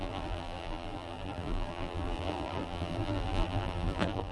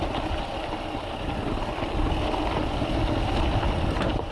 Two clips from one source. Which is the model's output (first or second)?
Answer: first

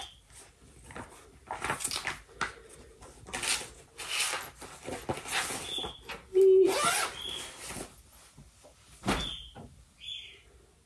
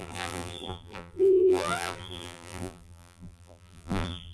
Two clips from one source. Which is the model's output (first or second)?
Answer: second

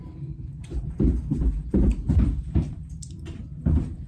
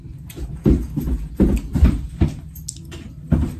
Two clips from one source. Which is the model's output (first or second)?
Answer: first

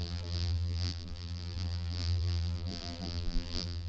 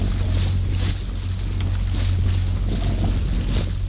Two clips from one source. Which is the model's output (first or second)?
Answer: first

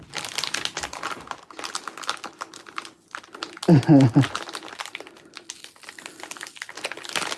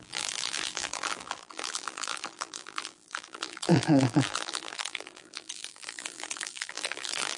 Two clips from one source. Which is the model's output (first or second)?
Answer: second